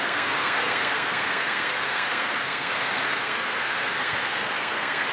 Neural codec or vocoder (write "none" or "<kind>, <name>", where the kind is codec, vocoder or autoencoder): codec, SNAC